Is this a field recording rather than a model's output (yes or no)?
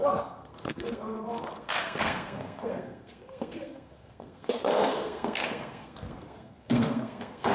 no